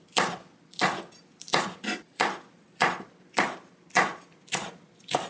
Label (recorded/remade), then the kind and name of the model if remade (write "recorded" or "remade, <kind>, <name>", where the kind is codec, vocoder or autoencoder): recorded